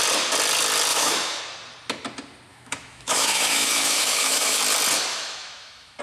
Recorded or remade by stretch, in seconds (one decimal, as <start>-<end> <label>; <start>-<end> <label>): 0.0-0.9 recorded; 0.9-1.4 remade; 1.4-2.5 recorded; 2.5-4.6 remade; 4.6-5.1 recorded; 5.1-6.0 remade